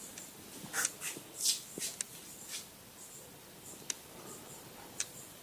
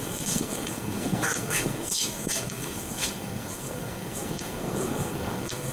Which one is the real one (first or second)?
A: first